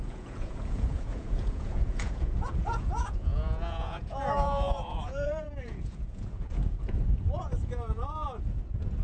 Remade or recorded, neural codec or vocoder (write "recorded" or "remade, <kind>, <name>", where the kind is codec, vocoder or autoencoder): remade, vocoder, Vocos